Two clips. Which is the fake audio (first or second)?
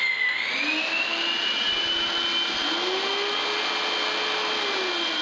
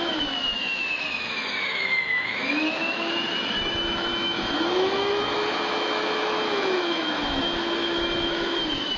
second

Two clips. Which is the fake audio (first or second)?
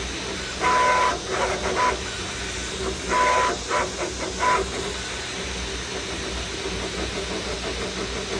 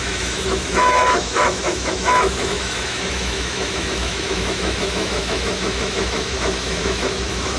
second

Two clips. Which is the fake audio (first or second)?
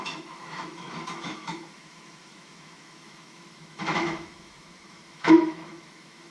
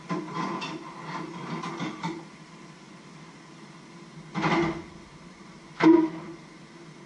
first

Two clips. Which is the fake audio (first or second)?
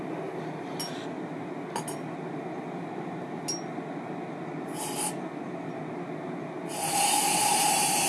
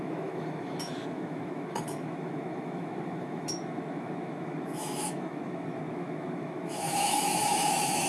second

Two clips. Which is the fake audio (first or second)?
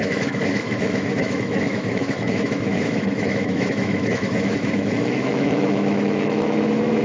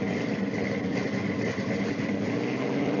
first